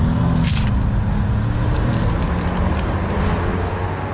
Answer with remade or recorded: recorded